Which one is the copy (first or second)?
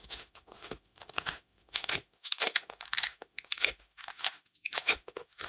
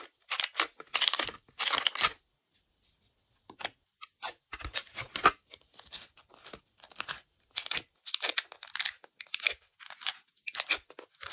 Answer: first